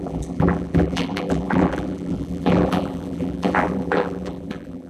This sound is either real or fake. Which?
fake